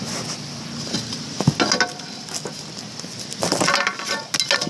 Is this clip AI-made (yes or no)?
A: no